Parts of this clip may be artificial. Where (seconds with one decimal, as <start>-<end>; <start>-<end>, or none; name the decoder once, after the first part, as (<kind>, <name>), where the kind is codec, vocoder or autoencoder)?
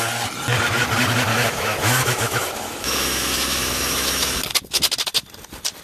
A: 1.3-4.4 (autoencoder, DAC-VAE)